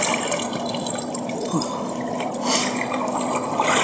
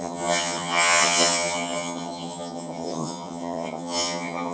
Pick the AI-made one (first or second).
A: second